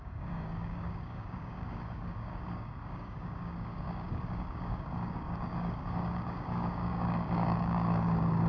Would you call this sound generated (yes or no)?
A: yes